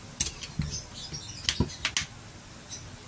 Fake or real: real